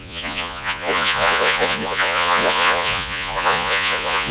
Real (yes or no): no